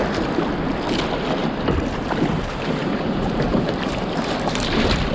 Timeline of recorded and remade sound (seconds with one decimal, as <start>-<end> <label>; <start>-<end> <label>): 0.0-1.4 recorded; 1.4-4.5 remade; 4.5-5.1 recorded